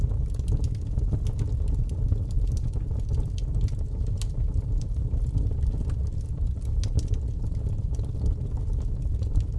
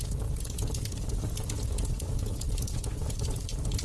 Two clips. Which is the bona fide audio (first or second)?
first